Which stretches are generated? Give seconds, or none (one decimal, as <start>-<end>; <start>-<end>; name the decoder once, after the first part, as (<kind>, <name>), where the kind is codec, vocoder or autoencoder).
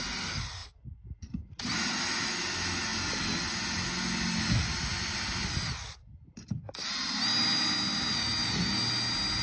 none